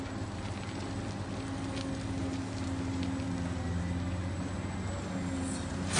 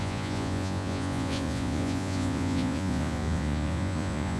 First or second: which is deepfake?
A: second